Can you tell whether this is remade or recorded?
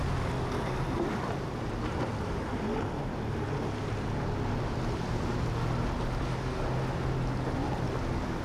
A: recorded